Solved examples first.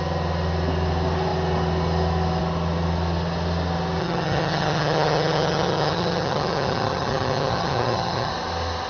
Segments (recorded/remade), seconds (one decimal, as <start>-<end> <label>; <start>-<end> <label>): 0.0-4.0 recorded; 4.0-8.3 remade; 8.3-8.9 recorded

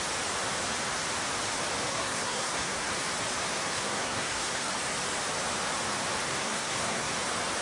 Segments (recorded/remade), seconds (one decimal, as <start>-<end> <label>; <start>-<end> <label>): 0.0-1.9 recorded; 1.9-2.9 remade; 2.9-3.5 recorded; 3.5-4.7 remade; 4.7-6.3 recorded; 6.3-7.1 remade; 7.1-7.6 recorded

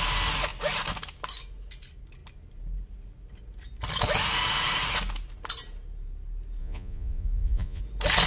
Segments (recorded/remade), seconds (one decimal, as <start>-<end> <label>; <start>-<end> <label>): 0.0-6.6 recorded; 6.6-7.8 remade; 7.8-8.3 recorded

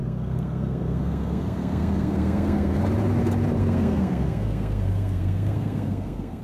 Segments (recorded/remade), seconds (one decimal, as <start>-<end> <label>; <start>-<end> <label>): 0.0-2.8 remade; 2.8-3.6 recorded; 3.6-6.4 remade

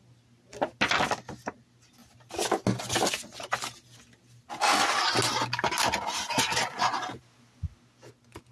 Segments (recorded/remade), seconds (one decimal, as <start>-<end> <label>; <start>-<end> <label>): 0.0-8.5 recorded